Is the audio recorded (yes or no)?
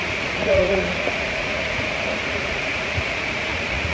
no